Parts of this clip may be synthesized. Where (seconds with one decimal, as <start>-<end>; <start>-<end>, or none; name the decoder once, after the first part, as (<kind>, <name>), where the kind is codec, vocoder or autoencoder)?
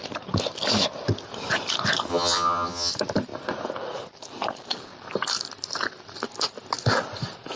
2.1-2.9 (vocoder, HiFi-GAN)